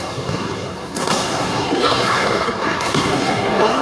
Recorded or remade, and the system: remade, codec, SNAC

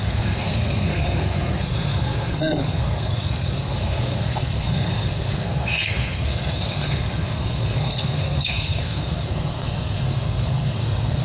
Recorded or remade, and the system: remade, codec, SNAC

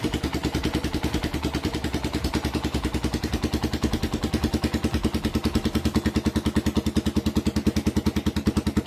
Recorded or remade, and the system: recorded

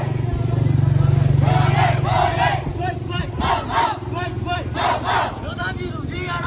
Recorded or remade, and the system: recorded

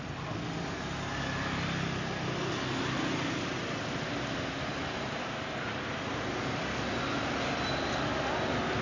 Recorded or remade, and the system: recorded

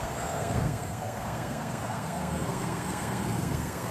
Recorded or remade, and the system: remade, codec, SNAC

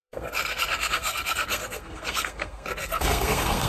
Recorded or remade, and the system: remade, codec, SNAC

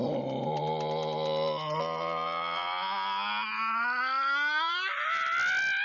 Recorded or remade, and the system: recorded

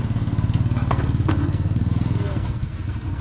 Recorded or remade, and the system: remade, codec, SNAC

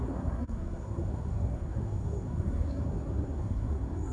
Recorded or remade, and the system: remade, codec, SNAC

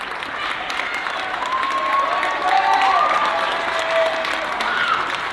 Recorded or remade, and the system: recorded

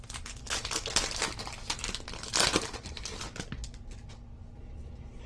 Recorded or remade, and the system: recorded